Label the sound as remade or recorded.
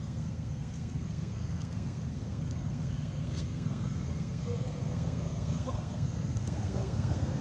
remade